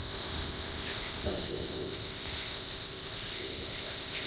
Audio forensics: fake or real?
fake